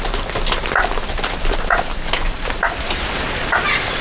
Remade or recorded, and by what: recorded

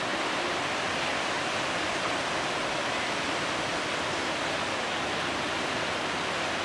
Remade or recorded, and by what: recorded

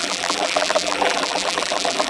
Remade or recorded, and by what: remade, vocoder, BigVGAN v2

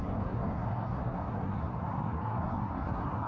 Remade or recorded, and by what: remade, codec, SNAC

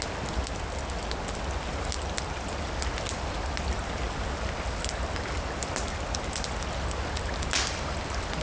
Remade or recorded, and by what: recorded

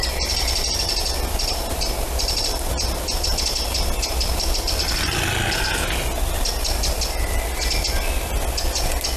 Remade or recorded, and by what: recorded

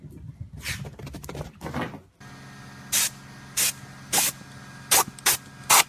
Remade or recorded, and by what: recorded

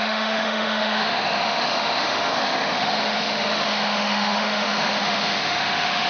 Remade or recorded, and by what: remade, autoencoder, DAC-VAE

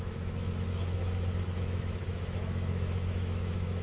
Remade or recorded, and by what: remade, autoencoder, DAC-VAE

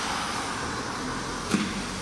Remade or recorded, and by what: recorded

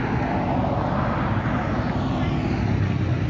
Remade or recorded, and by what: recorded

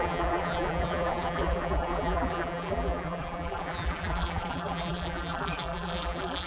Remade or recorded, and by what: remade, vocoder, BigVGAN v2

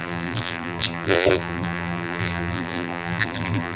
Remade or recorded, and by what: remade, vocoder, BigVGAN v2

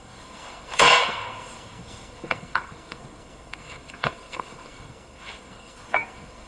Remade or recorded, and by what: remade, codec, SNAC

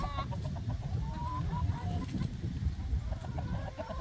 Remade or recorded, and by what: recorded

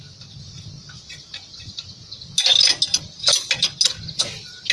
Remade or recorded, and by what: recorded